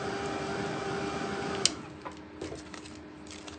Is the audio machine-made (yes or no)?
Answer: no